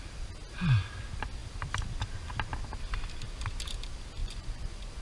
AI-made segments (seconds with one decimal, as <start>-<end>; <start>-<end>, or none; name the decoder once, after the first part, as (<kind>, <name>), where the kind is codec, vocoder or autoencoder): 4.2-5.0 (vocoder, Vocos)